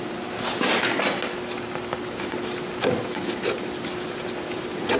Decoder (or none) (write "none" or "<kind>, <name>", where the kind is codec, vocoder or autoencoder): none